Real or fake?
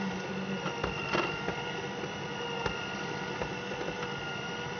real